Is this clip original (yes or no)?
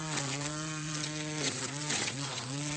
no